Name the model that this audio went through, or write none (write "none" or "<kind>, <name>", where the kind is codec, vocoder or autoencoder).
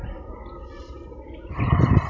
none